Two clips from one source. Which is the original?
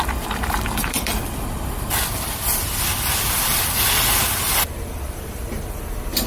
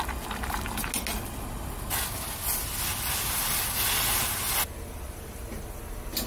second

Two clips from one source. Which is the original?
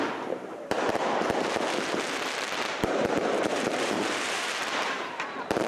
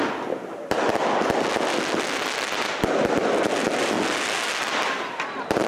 second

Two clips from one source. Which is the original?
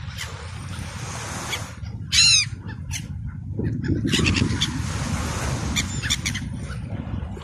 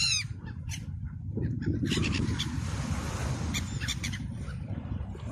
first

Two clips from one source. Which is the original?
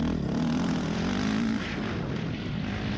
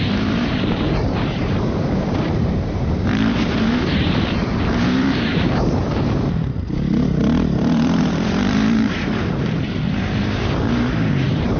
first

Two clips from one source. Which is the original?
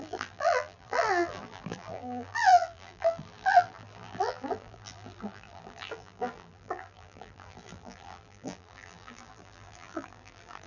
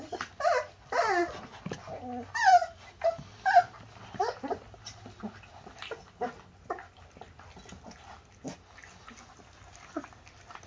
second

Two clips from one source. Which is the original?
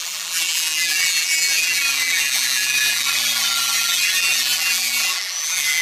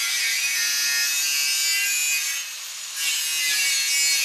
second